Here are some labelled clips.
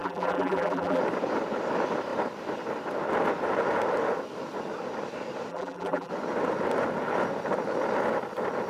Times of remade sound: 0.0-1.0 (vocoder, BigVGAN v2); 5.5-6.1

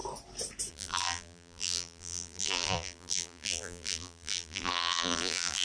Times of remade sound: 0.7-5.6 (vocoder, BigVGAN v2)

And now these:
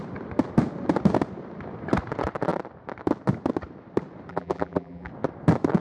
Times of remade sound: 4.3-5.1 (vocoder, BigVGAN v2)

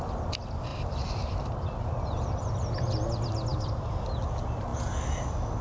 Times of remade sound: 0.7-2.5 (vocoder, BigVGAN v2); 3.5-4.2